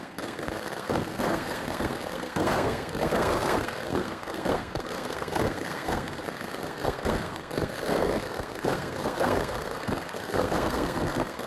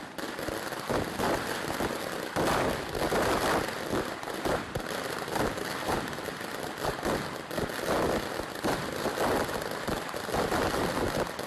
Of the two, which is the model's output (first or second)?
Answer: first